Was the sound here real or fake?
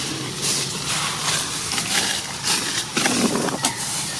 real